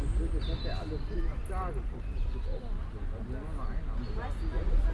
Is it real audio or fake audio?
real